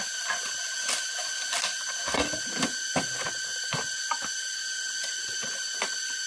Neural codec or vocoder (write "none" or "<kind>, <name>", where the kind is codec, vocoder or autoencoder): none